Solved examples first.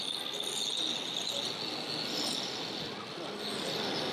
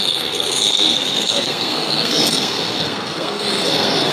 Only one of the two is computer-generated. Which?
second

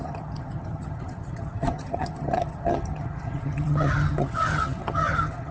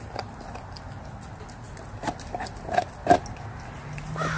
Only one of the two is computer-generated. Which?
first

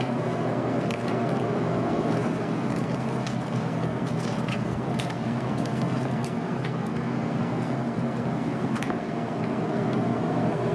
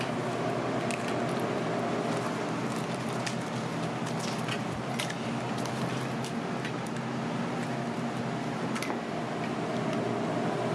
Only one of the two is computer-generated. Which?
first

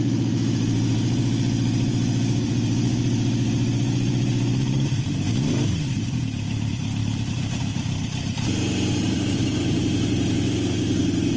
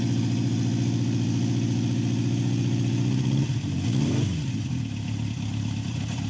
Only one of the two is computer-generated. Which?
first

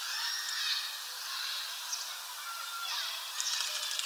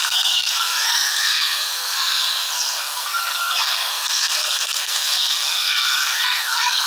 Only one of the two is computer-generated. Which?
second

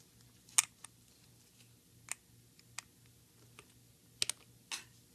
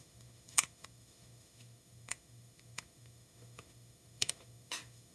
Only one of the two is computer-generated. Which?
second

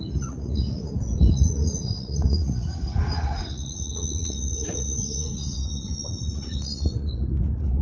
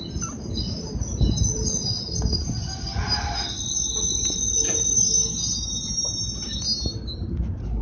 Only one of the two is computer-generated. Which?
first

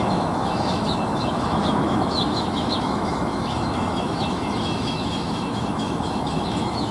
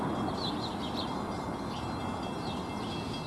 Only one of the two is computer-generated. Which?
first